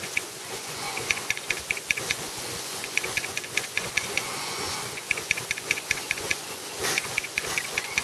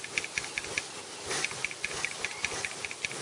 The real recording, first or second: second